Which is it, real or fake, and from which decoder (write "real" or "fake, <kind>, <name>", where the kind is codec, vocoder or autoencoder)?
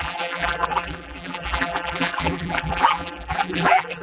fake, vocoder, BigVGAN v2